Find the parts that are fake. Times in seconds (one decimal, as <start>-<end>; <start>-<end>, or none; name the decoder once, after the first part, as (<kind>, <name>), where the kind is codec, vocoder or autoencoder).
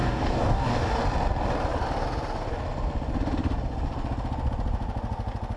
0.0-1.0 (codec, DAC)